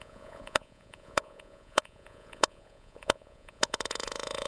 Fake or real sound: fake